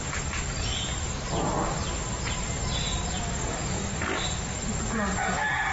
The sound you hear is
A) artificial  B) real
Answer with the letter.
B